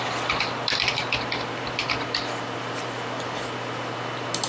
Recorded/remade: remade